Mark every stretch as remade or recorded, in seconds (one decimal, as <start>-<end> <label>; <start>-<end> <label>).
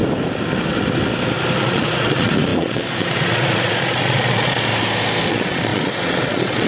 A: 0.0-1.6 recorded; 1.6-4.7 remade; 4.7-5.3 recorded; 5.3-6.7 remade